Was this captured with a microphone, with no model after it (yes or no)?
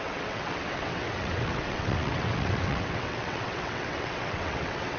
no